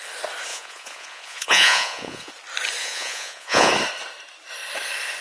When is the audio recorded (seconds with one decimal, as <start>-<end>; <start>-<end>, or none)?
0.0-0.5; 2.3-2.8; 3.7-5.2